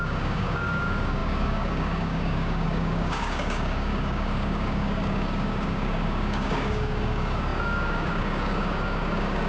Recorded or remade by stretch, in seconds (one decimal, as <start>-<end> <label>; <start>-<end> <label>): 0.0-9.5 remade